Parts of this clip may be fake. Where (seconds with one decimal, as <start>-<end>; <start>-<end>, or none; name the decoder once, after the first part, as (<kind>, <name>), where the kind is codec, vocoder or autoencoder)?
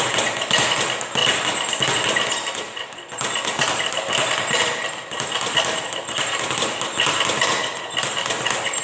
none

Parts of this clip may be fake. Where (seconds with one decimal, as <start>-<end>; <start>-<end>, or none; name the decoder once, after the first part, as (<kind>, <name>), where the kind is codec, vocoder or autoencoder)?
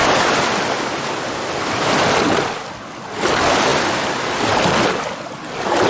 none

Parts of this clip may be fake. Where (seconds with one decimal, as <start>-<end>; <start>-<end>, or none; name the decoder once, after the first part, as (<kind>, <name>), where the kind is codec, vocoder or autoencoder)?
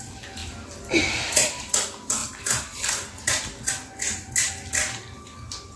none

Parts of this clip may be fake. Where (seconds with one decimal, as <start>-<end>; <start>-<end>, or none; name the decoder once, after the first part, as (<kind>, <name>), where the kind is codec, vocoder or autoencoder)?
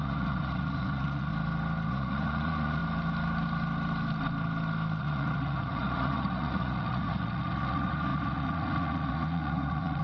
0.0-1.3 (vocoder, Vocos); 1.9-2.8; 5.0-10.0